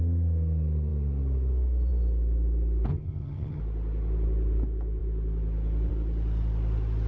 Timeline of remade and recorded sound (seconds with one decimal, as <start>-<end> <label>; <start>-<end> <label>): 0.0-2.9 recorded; 2.9-3.6 remade; 3.6-7.1 recorded